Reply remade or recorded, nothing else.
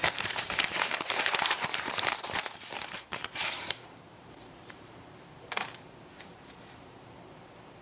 remade